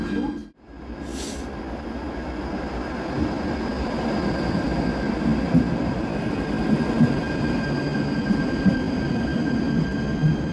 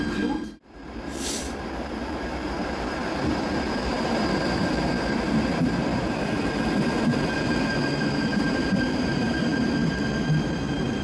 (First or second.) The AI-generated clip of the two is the second